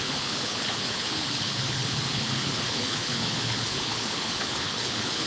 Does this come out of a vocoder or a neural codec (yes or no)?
yes